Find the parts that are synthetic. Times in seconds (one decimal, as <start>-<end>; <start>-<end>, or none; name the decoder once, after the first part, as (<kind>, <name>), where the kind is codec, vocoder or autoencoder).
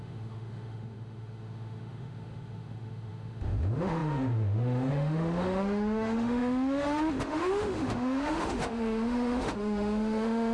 0.0-10.5 (autoencoder, DAC-VAE)